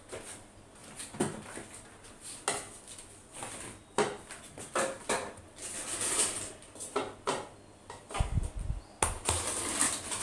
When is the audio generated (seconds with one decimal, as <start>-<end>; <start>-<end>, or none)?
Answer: none